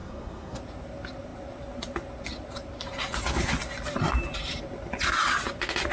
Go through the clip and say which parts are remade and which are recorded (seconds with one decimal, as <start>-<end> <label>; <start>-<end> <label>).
0.0-0.6 remade; 0.6-5.9 recorded